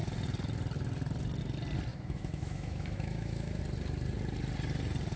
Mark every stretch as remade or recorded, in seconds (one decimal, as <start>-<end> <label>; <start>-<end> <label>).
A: 0.0-1.9 recorded; 1.9-3.6 remade; 3.6-5.2 recorded